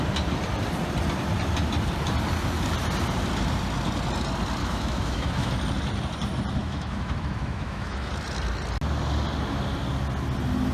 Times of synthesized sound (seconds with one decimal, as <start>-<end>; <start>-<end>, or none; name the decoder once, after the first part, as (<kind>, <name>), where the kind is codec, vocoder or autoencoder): 4.6-5.5 (autoencoder, DAC-VAE); 6.6-8.1